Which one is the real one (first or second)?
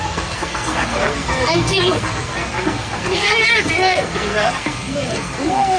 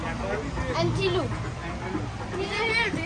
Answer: second